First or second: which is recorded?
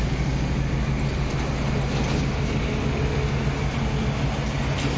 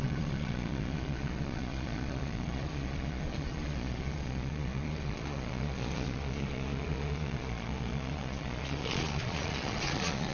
first